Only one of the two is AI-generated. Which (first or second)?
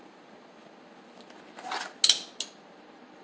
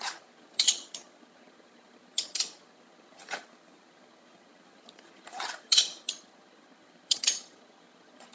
second